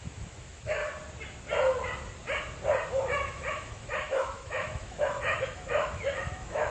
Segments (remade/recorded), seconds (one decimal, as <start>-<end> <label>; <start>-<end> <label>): 0.0-0.8 remade; 0.8-2.9 recorded; 2.9-6.7 remade